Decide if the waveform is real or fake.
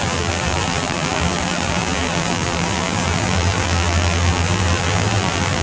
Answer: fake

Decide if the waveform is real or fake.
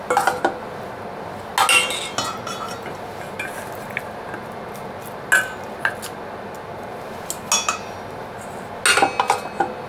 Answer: real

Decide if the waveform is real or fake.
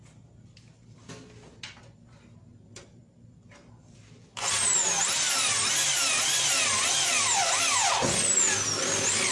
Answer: real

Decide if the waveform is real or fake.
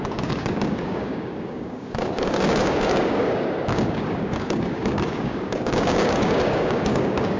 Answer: fake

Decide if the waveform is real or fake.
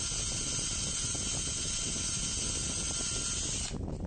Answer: real